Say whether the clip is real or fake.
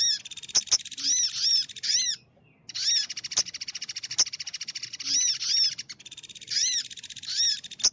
real